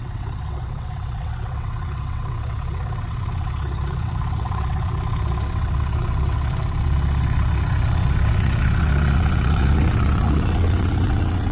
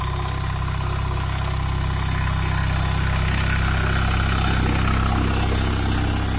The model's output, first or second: first